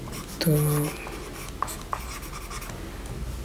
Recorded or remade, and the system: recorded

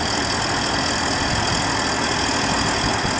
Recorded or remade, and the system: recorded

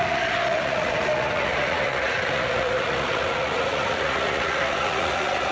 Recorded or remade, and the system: remade, vocoder, Vocos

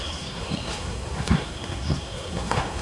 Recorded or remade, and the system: remade, codec, SNAC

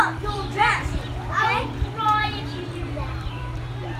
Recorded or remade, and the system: remade, vocoder, BigVGAN v2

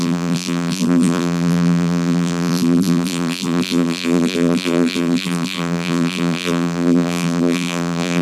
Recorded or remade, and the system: remade, vocoder, BigVGAN v2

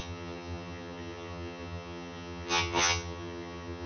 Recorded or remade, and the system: remade, vocoder, HiFi-GAN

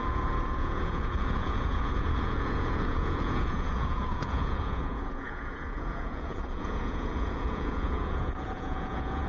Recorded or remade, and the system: remade, vocoder, Vocos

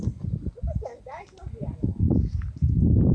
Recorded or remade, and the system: recorded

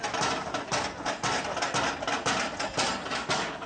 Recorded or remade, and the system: recorded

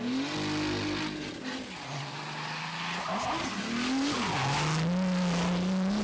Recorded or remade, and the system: recorded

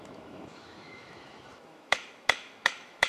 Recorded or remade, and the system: remade, autoencoder, DAC-VAE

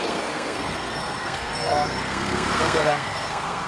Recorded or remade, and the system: remade, codec, SNAC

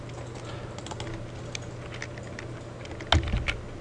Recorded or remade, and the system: recorded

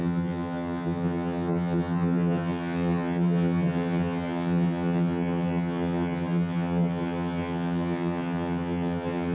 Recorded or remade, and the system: remade, vocoder, HiFi-GAN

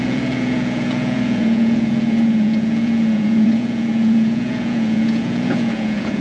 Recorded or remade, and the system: remade, vocoder, Vocos